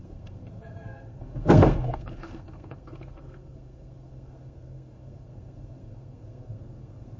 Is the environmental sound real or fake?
fake